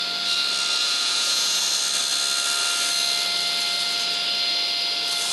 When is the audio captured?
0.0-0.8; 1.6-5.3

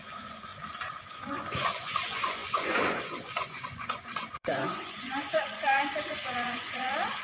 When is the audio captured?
0.5-1.1

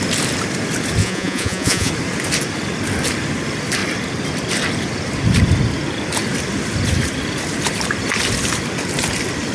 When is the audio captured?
0.0-1.0; 1.9-9.5

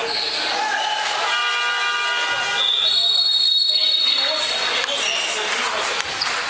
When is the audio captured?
0.0-6.5

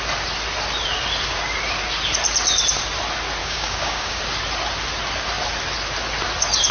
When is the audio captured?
0.0-3.4; 4.2-6.7

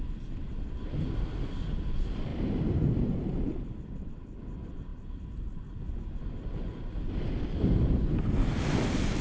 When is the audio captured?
0.0-9.2

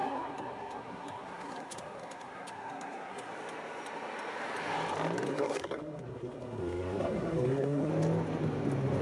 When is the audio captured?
3.3-5.3; 7.9-9.0